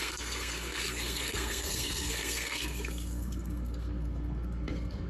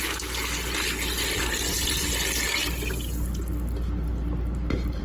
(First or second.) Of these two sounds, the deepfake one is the first